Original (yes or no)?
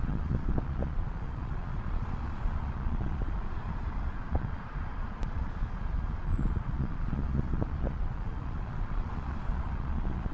no